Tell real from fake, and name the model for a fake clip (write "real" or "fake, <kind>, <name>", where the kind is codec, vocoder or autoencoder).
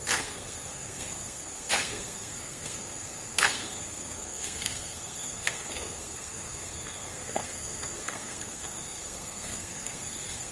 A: fake, codec, SNAC